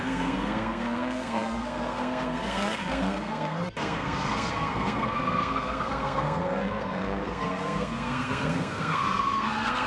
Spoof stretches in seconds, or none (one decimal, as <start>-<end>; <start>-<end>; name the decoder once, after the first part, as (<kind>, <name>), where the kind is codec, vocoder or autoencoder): 0.0-9.9 (codec, SNAC)